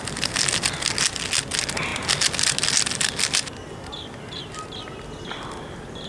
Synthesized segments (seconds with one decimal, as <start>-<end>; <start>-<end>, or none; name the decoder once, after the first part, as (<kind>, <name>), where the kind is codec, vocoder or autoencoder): none